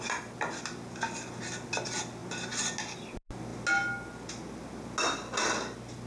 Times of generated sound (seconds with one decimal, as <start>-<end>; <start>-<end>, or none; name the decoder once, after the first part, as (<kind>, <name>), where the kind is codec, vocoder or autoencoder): none